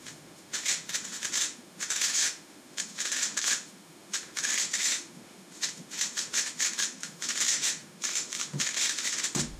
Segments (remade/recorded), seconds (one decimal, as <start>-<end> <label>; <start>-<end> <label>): 0.0-9.6 remade